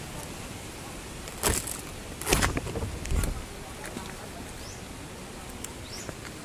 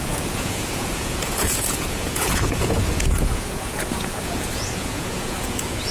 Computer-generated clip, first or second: second